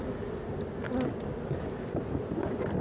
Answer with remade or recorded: recorded